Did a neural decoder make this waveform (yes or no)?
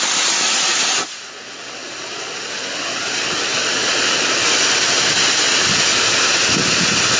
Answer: no